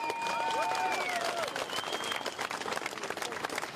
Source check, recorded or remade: recorded